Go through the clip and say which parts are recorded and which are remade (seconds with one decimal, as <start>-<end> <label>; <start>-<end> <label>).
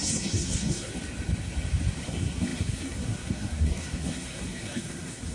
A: 0.0-0.9 remade; 0.9-2.0 recorded; 2.0-5.3 remade